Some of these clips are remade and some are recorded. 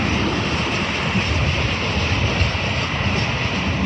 recorded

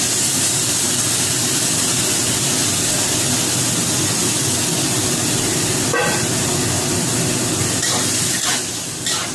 recorded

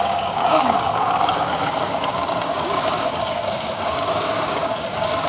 remade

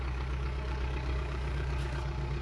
remade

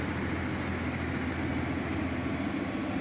recorded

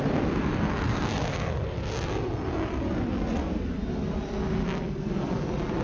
recorded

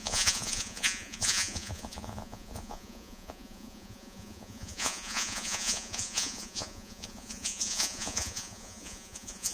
remade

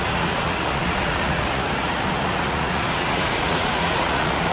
remade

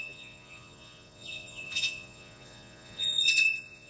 remade